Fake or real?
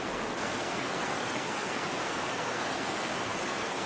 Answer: fake